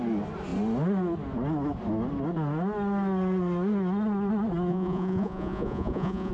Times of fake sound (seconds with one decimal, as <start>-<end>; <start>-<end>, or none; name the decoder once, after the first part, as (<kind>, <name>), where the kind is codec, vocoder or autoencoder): 4.7-6.3 (vocoder, Vocos)